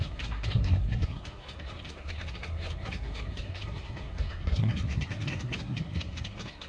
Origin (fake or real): fake